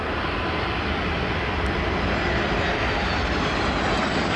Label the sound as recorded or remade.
recorded